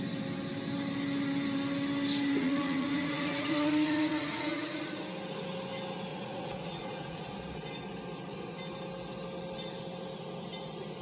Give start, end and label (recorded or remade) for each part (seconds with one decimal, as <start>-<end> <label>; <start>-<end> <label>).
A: 0.0-2.4 recorded; 2.4-5.0 remade; 5.0-6.1 recorded; 6.1-7.3 remade; 7.3-11.0 recorded